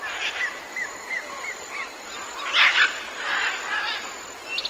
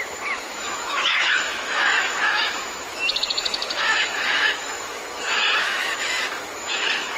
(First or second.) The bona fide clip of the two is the first